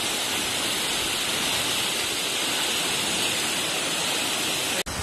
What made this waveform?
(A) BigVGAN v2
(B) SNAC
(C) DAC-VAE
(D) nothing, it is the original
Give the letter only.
D